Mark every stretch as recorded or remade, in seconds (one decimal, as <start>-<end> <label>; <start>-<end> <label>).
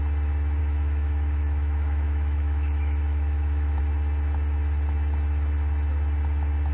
0.0-0.6 recorded; 0.6-3.8 remade; 3.8-6.7 recorded